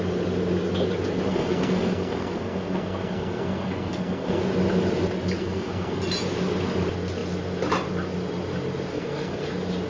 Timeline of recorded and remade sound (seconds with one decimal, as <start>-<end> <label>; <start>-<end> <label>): 0.0-1.3 recorded; 1.3-4.4 remade; 4.4-5.4 recorded; 5.4-6.0 remade; 6.0-8.9 recorded; 8.9-9.4 remade; 9.4-9.9 recorded